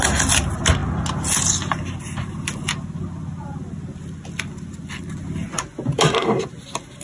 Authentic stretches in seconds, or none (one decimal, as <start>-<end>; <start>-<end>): 0.0-7.0